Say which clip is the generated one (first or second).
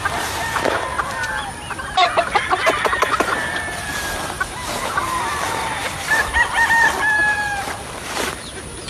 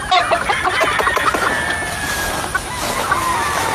first